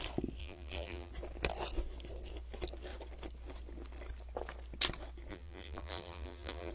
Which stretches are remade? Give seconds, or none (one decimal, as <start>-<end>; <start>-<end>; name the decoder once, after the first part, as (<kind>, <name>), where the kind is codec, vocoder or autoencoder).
0.4-1.1 (vocoder, BigVGAN v2); 5.3-6.7